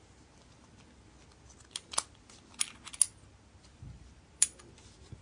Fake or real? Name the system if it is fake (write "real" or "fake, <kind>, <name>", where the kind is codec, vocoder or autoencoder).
real